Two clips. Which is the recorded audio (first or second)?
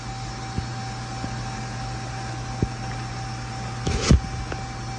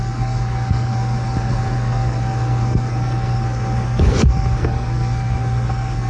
first